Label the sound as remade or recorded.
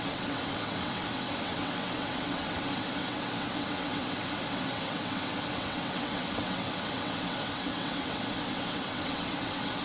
remade